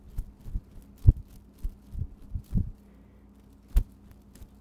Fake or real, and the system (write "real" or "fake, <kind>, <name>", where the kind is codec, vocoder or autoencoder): real